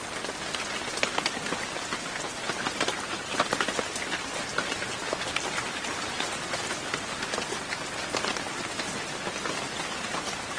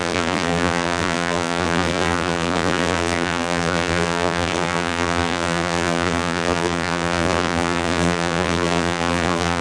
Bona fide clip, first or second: first